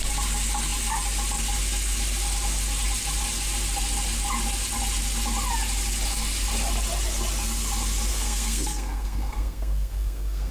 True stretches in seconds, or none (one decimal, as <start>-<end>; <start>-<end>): 0.0-8.1